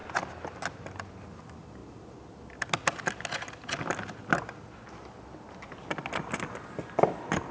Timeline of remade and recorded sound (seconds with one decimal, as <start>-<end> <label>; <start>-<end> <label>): 0.0-7.5 recorded